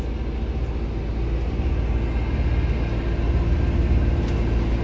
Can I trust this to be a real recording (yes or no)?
yes